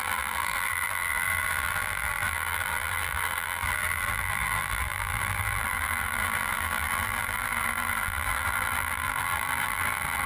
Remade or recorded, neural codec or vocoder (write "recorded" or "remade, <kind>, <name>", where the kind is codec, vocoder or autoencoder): remade, vocoder, BigVGAN v2